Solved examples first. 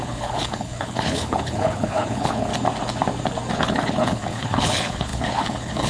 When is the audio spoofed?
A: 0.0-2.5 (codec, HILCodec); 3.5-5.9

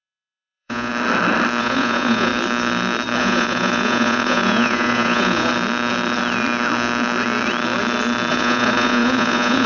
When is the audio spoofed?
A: 0.0-0.9 (vocoder, Vocos); 1.6-2.3; 3.2-5.5; 8.3-9.7

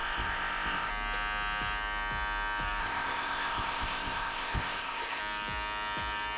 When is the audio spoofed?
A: 0.0-0.9 (codec, ZipCodec); 2.8-5.2

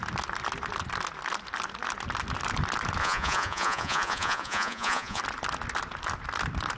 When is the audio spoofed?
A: 3.0-5.2 (vocoder, Vocos)

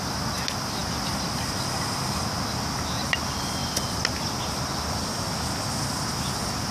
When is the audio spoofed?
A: none

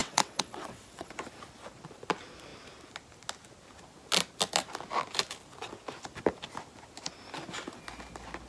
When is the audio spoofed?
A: 0.0-1.1 (vocoder, WaveNeXt)

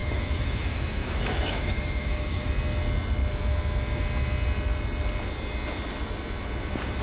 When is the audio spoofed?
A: 0.0-2.5 (autoencoder, DAC-VAE)

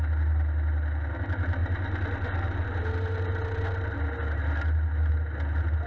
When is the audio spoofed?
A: none